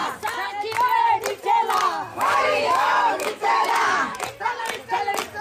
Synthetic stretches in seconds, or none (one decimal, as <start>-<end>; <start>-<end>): 2.1-4.2